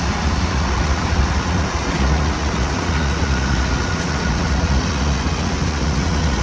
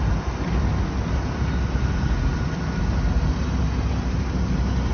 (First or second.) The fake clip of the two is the first